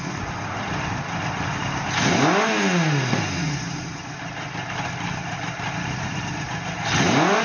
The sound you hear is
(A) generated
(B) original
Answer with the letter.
B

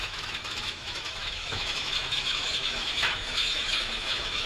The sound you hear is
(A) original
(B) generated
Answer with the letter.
B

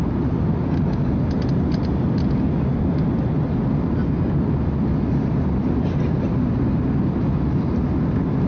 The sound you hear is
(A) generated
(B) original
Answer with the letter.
B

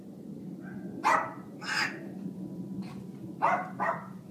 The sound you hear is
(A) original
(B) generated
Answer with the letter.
A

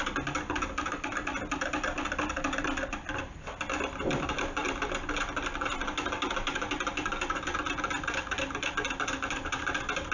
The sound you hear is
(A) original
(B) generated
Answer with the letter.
A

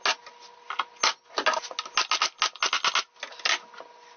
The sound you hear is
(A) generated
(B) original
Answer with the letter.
B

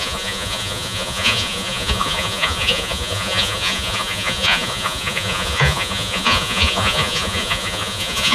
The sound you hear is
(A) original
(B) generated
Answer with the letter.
B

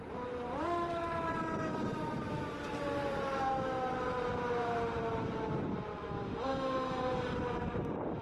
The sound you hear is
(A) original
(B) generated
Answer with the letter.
B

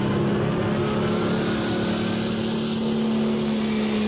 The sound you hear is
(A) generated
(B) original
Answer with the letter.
B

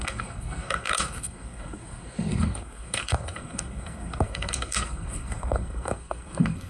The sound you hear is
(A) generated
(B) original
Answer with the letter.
A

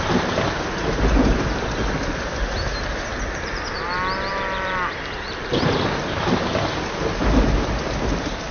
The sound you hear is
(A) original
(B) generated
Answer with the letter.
A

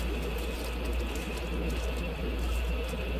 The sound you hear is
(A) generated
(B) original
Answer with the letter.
B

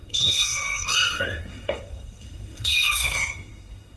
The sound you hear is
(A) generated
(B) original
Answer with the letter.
A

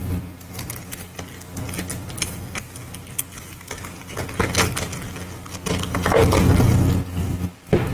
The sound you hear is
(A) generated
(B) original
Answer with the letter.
B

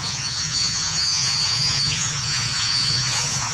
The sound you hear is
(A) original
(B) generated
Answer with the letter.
B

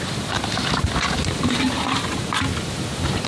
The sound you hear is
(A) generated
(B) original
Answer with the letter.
B